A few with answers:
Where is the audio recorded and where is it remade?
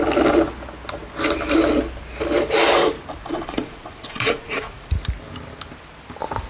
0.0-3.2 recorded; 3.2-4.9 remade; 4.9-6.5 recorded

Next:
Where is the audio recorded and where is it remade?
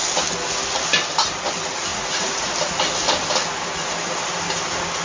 0.0-1.9 recorded; 1.9-2.5 remade; 2.5-5.0 recorded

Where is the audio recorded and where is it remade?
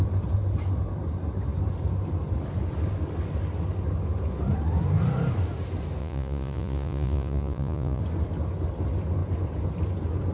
0.0-6.0 recorded; 6.0-8.0 remade; 8.0-10.3 recorded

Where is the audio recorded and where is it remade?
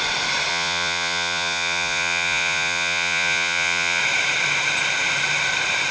0.0-0.5 recorded; 0.5-4.0 remade; 4.0-5.9 recorded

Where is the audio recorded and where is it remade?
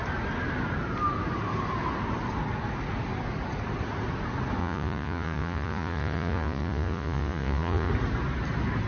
0.0-4.6 recorded; 4.6-7.9 remade; 7.9-8.9 recorded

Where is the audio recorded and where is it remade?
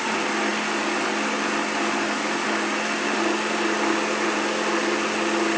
0.0-5.6 recorded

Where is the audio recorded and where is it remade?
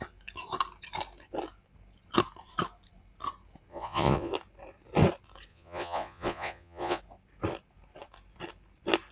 0.0-3.7 recorded; 3.7-4.3 remade; 4.3-5.5 recorded; 5.5-7.0 remade; 7.0-9.1 recorded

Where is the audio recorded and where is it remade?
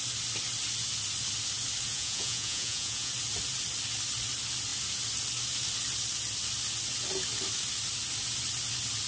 0.0-1.9 recorded; 1.9-3.1 remade; 3.1-9.1 recorded